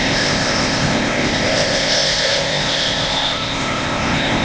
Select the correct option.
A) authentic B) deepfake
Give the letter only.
B